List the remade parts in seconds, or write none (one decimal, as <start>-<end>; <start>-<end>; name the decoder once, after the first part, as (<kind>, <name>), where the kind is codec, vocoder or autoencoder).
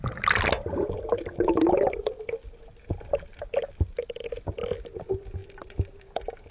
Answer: 0.6-4.5 (vocoder, BigVGAN v2); 5.4-6.0